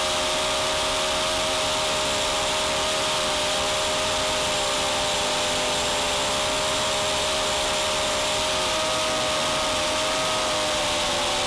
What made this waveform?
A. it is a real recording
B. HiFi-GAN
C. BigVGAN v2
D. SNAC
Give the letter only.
A